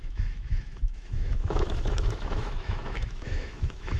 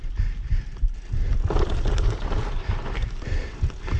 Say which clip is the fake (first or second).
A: first